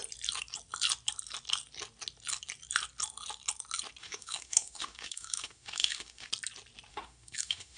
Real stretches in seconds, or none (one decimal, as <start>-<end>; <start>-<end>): 0.0-4.0; 6.3-6.9